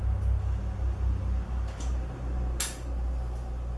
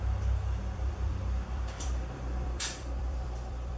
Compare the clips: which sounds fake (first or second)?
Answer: second